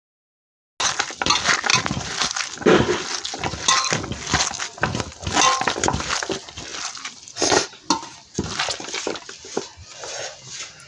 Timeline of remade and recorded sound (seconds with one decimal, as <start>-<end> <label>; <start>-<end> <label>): 0.0-6.7 recorded; 6.7-7.9 remade; 7.9-10.9 recorded